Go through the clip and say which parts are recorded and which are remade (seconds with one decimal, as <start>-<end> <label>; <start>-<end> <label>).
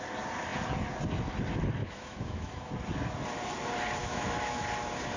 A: 0.0-1.8 recorded; 1.8-2.7 remade; 2.7-4.0 recorded; 4.0-4.6 remade; 4.6-5.2 recorded